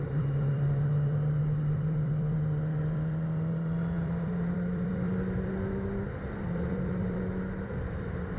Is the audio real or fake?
fake